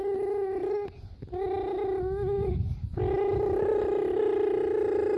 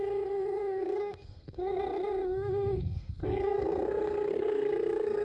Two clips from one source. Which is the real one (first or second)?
first